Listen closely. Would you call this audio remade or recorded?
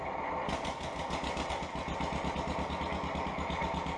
recorded